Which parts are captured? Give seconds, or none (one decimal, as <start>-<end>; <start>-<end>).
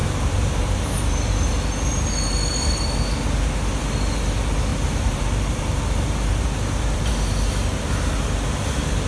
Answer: 1.0-4.7; 7.1-9.1